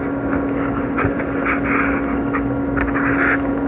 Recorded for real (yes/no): yes